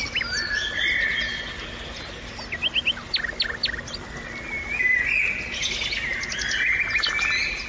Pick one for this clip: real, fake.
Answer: real